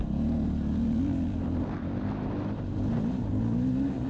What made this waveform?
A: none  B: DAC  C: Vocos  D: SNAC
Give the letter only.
A